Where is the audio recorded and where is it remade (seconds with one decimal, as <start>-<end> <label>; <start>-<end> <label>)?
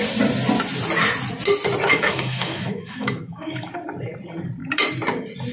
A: 0.0-1.9 recorded; 1.9-3.7 remade; 3.7-5.5 recorded